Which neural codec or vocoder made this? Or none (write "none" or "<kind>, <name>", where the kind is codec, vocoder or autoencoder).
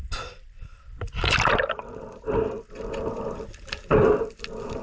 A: none